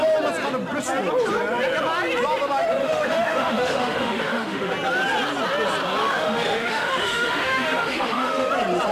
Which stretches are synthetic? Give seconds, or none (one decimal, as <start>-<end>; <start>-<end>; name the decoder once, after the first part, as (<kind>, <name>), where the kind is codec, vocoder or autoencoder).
2.8-4.7 (autoencoder, DAC-VAE); 6.0-8.5